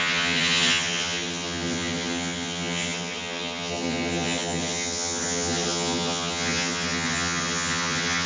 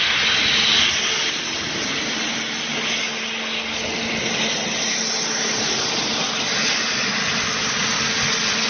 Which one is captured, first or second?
second